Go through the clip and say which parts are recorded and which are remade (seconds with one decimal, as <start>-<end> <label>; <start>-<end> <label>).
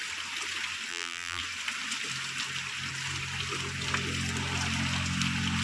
0.0-0.9 recorded; 0.9-1.4 remade; 1.4-5.6 recorded